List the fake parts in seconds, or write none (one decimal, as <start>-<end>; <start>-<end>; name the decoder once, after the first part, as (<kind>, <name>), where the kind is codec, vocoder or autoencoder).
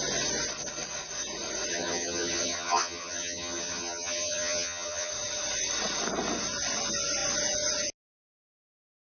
1.7-5.1 (vocoder, HiFi-GAN)